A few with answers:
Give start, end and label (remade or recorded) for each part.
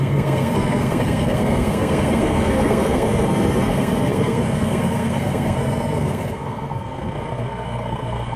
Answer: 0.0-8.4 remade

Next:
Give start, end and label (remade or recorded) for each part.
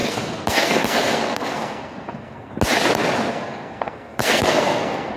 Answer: 0.0-2.5 remade; 2.5-3.3 recorded; 3.3-5.2 remade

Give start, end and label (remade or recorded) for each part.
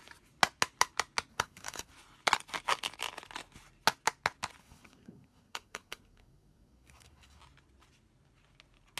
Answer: 0.0-1.3 recorded; 1.3-1.9 remade; 1.9-4.6 recorded; 4.6-7.4 remade; 7.4-9.0 recorded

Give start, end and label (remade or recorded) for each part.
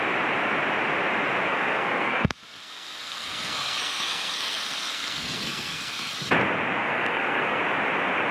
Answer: 0.0-1.5 recorded; 1.5-6.1 remade; 6.1-6.8 recorded; 6.8-7.6 remade; 7.6-8.3 recorded